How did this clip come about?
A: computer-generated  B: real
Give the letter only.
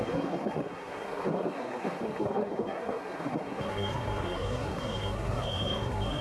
A